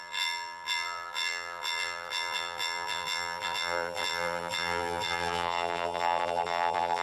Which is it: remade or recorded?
remade